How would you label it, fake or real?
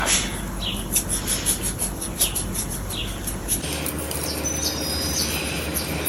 real